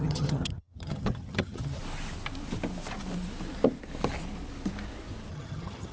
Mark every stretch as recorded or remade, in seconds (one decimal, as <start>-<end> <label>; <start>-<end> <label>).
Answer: 0.0-1.8 remade; 1.8-5.3 recorded; 5.3-5.9 remade